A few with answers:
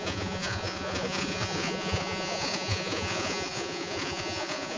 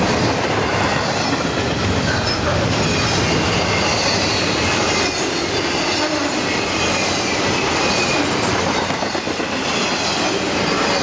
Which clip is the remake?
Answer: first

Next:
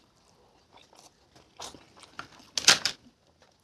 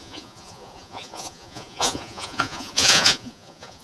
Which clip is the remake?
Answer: second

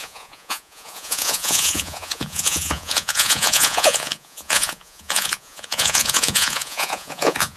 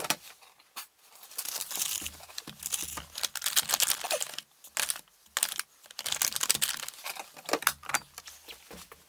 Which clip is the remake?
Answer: first